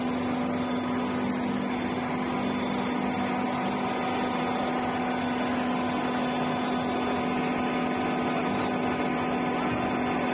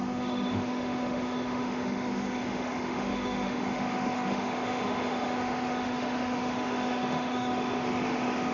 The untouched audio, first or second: first